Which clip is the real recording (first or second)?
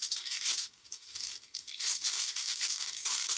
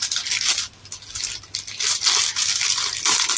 second